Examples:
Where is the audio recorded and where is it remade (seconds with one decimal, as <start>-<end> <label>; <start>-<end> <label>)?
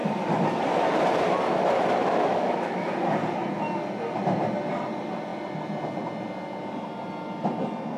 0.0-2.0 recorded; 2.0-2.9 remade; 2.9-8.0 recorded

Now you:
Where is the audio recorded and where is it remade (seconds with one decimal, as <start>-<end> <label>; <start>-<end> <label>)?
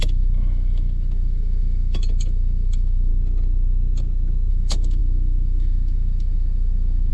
0.0-3.1 remade; 3.1-4.5 recorded; 4.5-7.1 remade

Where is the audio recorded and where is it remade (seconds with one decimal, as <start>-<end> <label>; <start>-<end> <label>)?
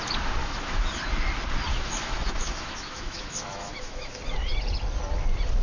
0.0-0.4 recorded; 0.4-1.0 remade; 1.0-1.7 recorded; 1.7-4.2 remade; 4.2-5.6 recorded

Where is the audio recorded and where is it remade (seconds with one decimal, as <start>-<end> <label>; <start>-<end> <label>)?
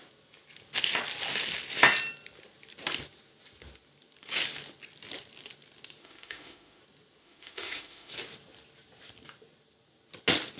0.0-6.0 recorded; 6.0-6.8 remade; 6.8-7.2 recorded; 7.2-8.1 remade; 8.1-10.6 recorded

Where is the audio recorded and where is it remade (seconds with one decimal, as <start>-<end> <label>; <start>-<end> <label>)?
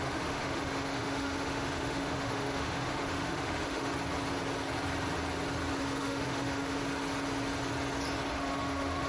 0.0-3.9 remade; 3.9-5.8 recorded; 5.8-6.8 remade; 6.8-8.3 recorded; 8.3-9.1 remade